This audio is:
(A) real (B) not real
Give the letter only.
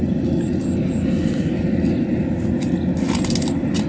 A